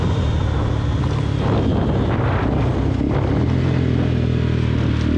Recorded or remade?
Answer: recorded